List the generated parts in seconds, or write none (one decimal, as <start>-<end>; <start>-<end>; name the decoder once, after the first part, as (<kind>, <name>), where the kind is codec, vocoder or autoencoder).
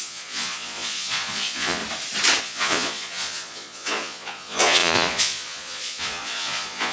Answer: 0.0-1.8 (vocoder, Vocos); 2.4-6.9